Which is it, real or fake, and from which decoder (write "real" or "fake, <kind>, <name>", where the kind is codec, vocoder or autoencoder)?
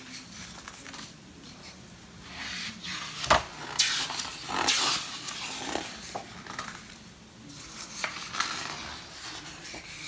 real